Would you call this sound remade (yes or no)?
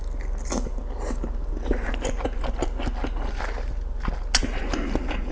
no